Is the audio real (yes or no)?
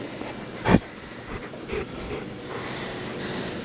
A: yes